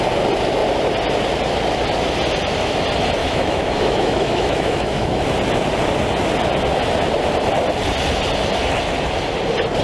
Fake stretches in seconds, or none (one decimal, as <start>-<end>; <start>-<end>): 3.2-5.2